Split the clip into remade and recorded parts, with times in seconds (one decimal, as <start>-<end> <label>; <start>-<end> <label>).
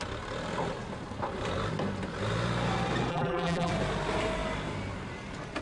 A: 0.0-3.1 recorded; 3.1-3.7 remade; 3.7-5.6 recorded